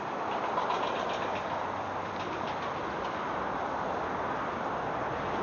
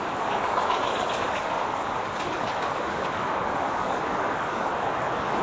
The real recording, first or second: first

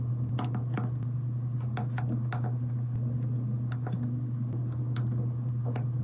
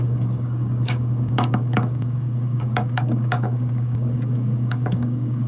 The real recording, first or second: first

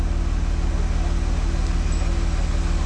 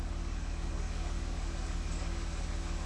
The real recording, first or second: first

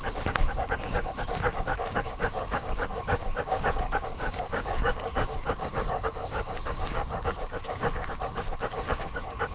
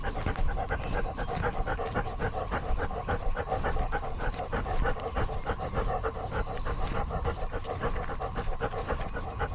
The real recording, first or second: second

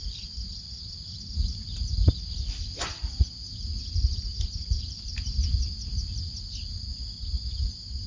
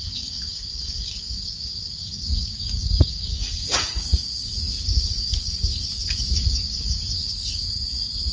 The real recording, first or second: first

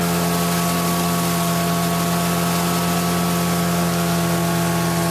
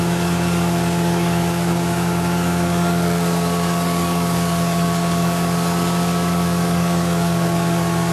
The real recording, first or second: first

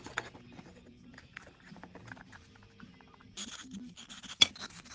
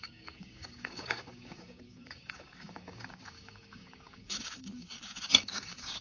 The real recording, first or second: first